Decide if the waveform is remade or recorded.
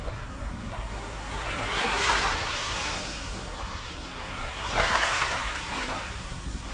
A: remade